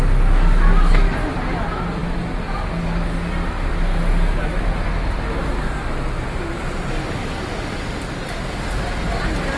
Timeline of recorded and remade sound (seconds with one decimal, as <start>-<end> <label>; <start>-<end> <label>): 0.0-9.6 recorded